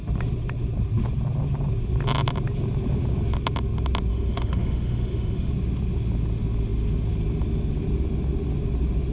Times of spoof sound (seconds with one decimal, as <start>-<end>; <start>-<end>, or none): 4.1-5.5